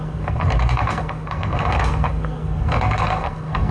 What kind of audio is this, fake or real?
fake